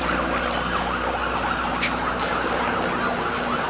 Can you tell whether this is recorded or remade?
recorded